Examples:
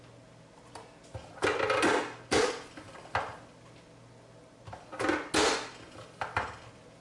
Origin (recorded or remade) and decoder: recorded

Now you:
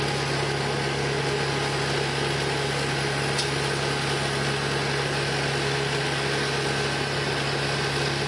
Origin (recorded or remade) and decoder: recorded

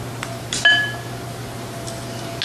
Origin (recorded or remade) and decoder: recorded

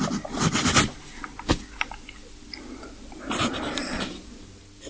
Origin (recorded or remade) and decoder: recorded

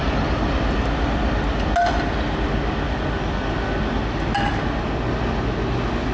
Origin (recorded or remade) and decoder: recorded